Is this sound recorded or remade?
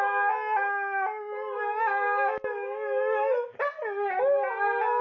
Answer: recorded